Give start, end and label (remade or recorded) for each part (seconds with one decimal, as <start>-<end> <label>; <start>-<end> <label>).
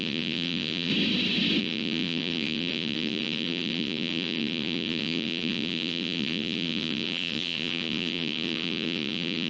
0.0-0.9 remade; 0.9-1.6 recorded; 1.6-9.5 remade